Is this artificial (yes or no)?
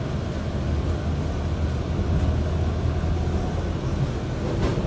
no